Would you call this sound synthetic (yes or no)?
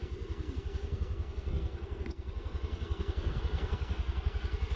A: yes